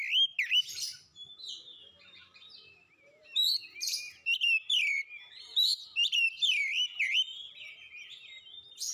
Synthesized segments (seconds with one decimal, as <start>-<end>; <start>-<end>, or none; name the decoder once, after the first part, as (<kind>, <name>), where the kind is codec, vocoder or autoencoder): 1.8-6.6 (vocoder, BigVGAN v2)